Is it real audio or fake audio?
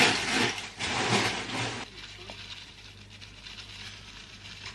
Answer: fake